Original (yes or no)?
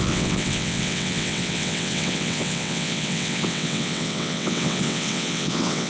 no